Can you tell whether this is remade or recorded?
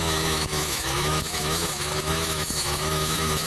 remade